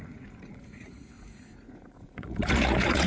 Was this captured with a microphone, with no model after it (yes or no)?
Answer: no